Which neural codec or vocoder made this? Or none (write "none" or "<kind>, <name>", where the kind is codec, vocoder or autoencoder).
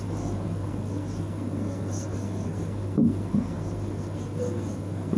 codec, SNAC